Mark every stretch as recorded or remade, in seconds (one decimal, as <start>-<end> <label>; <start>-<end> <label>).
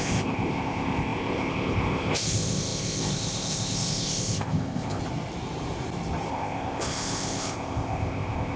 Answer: 0.0-5.0 remade; 5.0-6.3 recorded; 6.3-8.6 remade